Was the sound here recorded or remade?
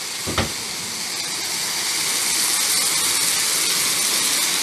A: recorded